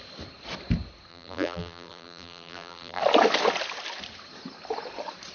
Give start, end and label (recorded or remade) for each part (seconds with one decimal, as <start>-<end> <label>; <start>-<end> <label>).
0.0-1.1 recorded; 1.1-3.0 remade; 3.0-5.3 recorded